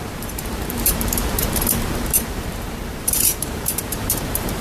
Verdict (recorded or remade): remade